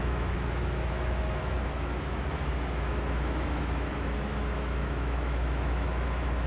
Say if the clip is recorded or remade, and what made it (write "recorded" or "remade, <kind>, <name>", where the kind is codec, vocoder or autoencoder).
remade, autoencoder, DAC-VAE